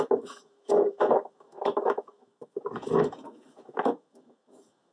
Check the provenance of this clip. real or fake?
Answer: fake